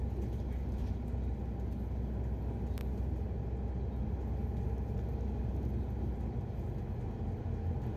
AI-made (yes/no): no